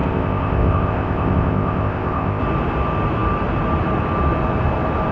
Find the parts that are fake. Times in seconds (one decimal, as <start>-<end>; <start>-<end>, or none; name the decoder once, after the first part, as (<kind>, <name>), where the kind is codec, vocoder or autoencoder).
0.0-2.4 (codec, ZipCodec)